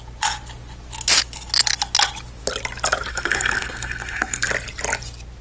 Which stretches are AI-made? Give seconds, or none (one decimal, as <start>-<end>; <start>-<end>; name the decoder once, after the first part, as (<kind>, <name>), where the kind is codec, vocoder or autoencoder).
3.1-4.5 (codec, SNAC)